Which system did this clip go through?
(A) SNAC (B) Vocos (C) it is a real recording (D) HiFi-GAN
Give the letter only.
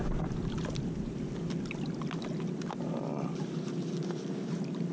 C